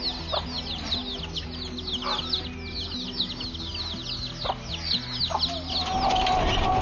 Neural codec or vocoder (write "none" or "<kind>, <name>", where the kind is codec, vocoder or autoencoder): none